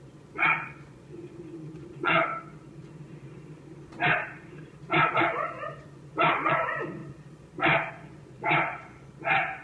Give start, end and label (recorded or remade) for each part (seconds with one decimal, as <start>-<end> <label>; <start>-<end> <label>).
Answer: 0.0-2.3 remade; 2.3-5.1 recorded; 5.1-7.0 remade; 7.0-7.9 recorded; 7.9-9.6 remade